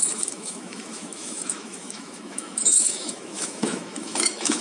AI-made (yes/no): yes